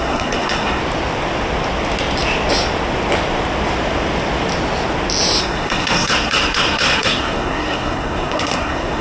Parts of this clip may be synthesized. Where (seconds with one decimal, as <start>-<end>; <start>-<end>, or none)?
0.0-0.8; 5.4-9.0